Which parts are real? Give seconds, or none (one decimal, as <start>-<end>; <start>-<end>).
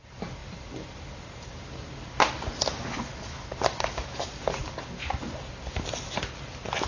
0.0-6.9